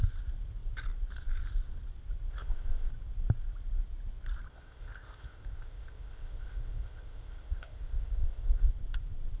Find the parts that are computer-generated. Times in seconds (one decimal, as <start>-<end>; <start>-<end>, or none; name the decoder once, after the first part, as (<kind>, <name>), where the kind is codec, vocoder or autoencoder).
2.3-2.9 (codec, ZipCodec); 4.5-8.7